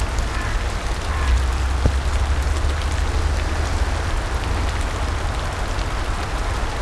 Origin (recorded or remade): recorded